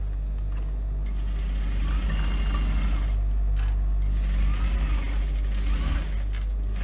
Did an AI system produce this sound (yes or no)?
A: no